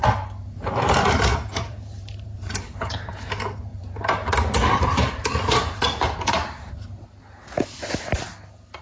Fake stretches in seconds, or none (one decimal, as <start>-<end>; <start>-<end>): 1.3-3.1; 3.7-6.7